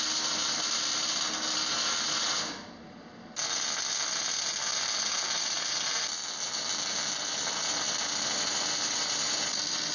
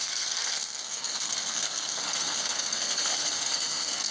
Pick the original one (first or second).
first